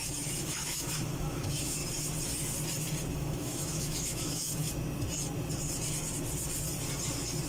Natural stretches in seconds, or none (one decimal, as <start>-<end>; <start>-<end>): 1.8-3.1; 4.6-7.5